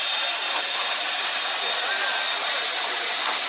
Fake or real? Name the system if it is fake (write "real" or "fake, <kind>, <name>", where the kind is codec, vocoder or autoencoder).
real